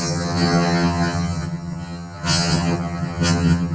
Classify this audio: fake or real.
fake